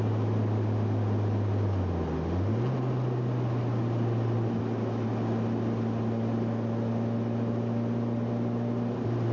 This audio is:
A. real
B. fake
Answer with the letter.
A